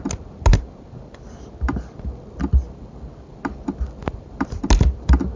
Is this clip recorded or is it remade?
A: recorded